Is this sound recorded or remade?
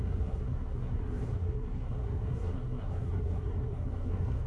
remade